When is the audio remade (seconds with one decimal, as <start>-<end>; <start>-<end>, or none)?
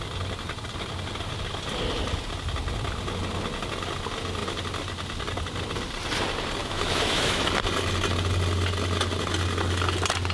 6.6-7.4